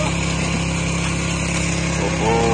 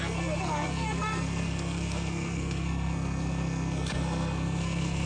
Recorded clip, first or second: first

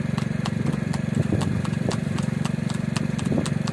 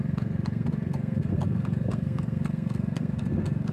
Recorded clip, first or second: first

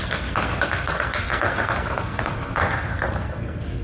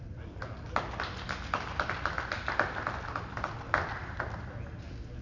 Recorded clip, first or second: second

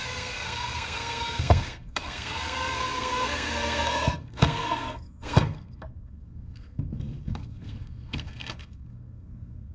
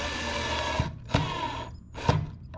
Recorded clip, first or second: second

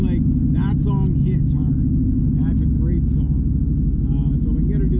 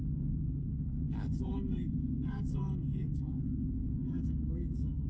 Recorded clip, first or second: first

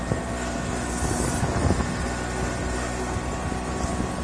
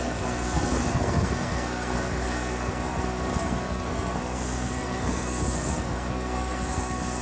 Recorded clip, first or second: first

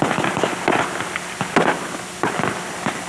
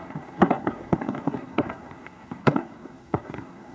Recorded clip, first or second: first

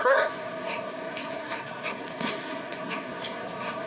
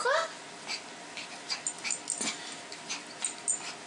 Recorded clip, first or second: second